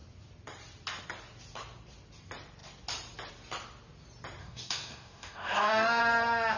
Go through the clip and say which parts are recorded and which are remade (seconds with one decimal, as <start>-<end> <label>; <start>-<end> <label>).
0.0-4.4 recorded; 4.4-6.0 remade; 6.0-6.6 recorded